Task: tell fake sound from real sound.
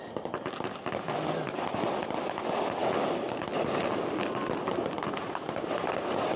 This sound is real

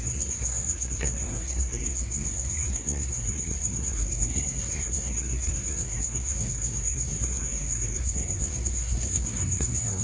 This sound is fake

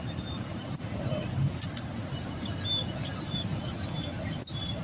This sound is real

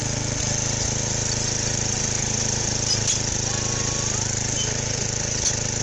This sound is real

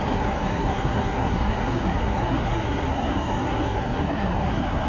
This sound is fake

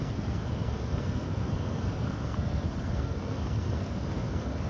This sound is fake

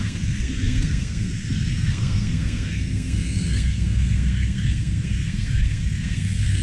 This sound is fake